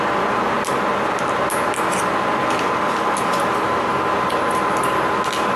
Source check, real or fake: real